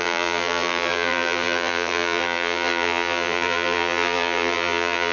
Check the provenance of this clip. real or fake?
fake